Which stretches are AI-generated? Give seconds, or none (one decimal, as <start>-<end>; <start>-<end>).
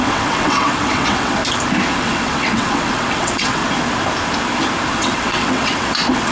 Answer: 0.0-1.4; 2.0-3.6; 4.9-6.3